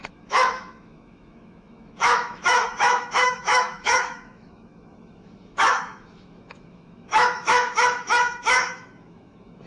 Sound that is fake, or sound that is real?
fake